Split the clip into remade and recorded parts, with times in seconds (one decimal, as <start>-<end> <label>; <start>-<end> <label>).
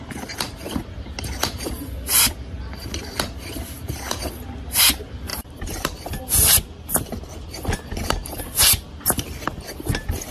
0.0-10.3 recorded